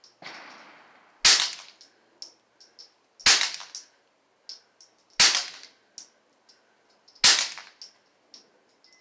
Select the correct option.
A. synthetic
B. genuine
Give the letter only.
B